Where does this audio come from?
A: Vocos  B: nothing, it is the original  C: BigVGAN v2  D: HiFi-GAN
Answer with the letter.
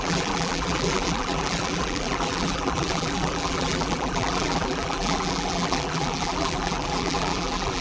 C